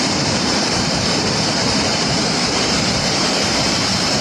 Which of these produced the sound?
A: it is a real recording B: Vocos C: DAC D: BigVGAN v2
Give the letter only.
D